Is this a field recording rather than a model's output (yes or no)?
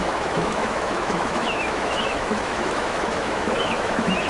no